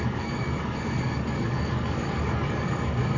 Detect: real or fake fake